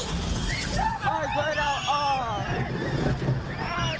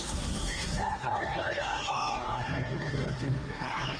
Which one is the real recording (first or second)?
first